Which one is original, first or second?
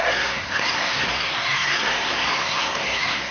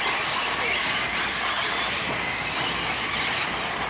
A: second